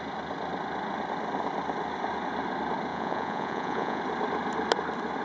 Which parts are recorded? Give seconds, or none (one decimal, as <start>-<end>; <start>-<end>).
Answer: 0.0-2.9; 4.0-5.2